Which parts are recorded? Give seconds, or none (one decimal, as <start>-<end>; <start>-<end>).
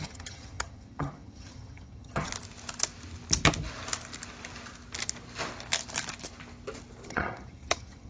2.3-7.1